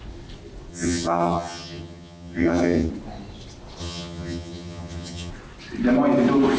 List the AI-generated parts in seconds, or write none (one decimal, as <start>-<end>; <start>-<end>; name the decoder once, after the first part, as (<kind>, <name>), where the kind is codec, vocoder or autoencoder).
0.7-2.9 (vocoder, HiFi-GAN); 3.8-5.3